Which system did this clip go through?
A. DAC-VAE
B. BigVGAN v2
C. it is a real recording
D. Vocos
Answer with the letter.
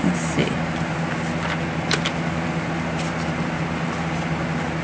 C